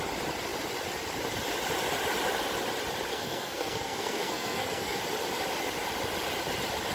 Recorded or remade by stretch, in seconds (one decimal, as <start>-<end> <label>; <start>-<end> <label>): 0.0-3.1 recorded; 3.1-5.0 remade; 5.0-6.9 recorded